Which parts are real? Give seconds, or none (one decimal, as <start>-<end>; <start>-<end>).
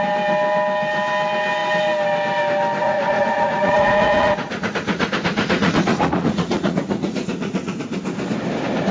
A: 0.0-2.8; 7.8-8.9